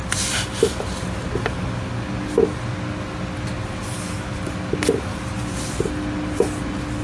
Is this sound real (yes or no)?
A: yes